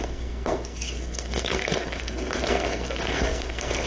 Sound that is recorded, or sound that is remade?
remade